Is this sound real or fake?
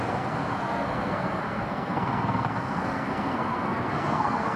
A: fake